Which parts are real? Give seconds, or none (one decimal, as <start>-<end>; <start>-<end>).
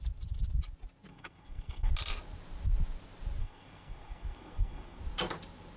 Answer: 0.0-1.1; 1.9-3.4; 5.0-5.8